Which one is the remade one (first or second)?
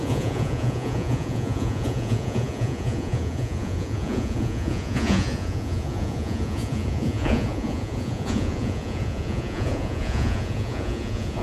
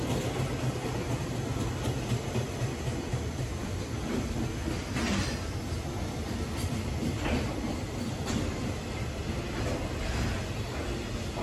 first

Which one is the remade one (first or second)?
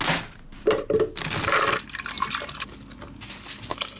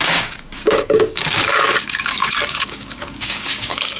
second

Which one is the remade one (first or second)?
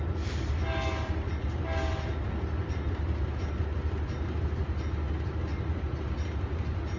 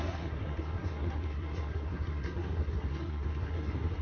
second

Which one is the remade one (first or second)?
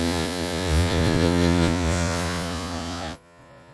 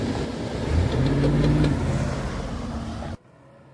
first